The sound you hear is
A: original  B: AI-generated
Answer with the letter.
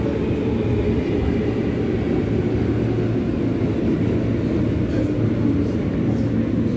A